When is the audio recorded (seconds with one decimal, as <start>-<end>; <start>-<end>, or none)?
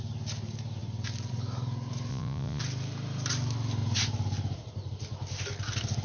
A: 0.0-2.1; 2.6-6.0